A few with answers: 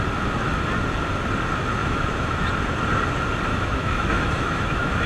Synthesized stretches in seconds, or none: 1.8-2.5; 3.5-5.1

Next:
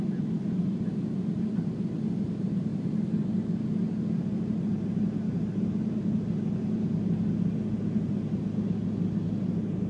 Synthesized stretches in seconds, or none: none

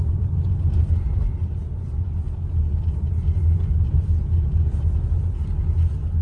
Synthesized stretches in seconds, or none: none

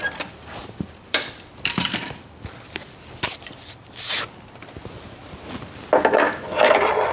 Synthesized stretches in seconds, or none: 0.0-4.1

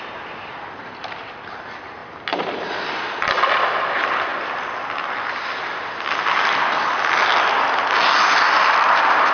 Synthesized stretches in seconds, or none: 0.0-2.0; 2.7-4.3; 8.7-9.3